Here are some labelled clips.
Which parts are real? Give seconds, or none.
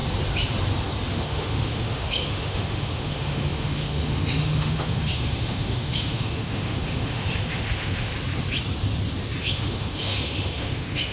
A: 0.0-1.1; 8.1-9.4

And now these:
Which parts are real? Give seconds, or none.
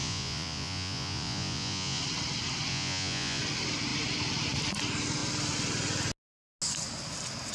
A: 2.0-2.7; 3.4-7.5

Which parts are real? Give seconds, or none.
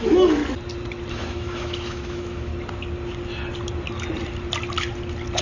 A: 0.4-1.1; 2.5-5.4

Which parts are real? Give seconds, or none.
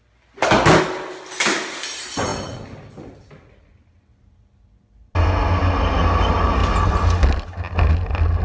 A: 0.0-8.4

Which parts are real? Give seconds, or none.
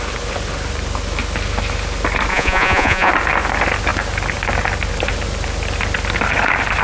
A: 0.0-2.3; 3.1-6.8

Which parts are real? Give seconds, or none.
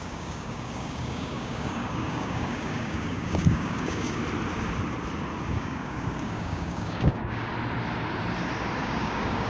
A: 4.2-5.5; 7.5-8.8